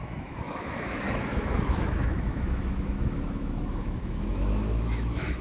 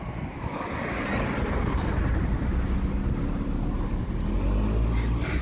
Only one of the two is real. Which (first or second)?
second